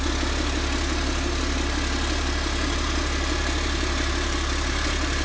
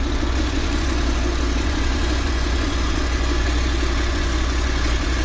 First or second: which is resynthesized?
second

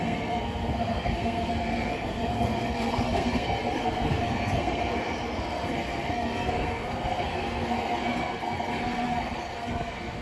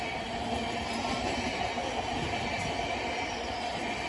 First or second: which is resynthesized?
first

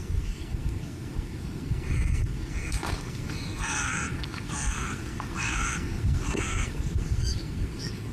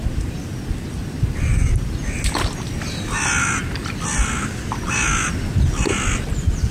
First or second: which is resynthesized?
first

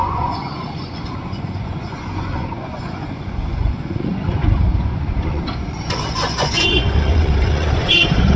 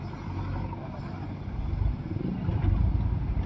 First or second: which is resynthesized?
first